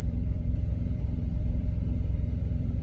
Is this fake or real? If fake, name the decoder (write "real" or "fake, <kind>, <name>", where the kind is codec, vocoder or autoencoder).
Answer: fake, vocoder, BigVGAN v2